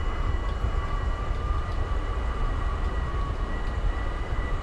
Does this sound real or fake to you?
real